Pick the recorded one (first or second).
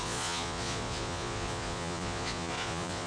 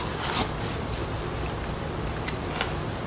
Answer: second